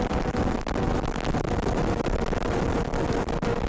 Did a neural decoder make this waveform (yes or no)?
no